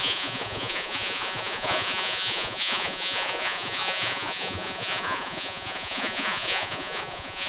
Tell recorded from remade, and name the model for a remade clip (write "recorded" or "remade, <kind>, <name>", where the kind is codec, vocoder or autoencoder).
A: remade, vocoder, Vocos